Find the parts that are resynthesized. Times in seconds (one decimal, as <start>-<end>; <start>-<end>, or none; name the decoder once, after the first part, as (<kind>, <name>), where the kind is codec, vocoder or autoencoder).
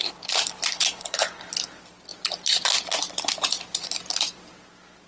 0.7-1.5 (codec, HILCodec)